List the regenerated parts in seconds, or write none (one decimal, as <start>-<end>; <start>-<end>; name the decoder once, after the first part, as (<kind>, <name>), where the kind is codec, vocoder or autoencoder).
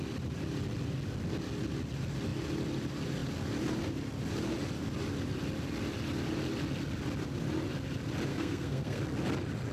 8.3-9.0 (codec, SNAC)